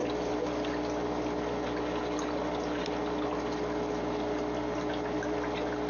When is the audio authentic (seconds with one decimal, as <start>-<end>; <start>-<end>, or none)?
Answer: 0.0-5.9